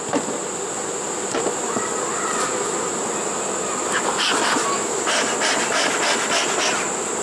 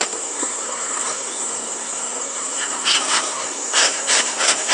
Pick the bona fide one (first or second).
first